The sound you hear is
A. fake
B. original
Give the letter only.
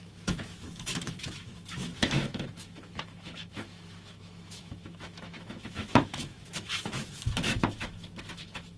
A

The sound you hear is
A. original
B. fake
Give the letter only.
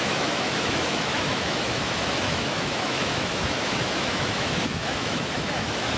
B